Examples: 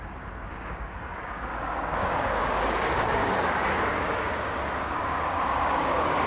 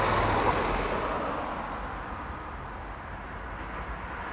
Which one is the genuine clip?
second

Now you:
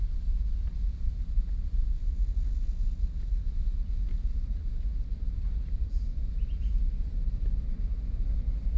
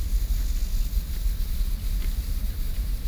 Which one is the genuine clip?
first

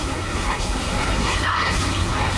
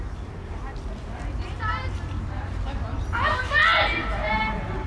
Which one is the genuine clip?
second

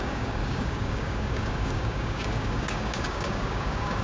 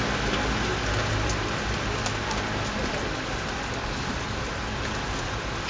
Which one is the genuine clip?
second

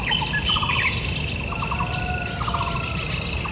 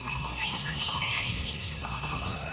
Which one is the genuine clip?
first